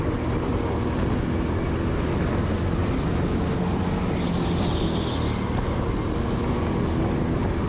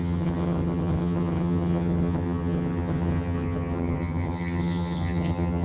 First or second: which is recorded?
first